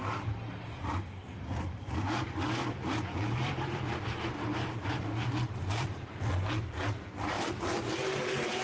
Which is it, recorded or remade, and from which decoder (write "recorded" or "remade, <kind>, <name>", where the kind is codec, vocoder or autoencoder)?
remade, vocoder, BigVGAN v2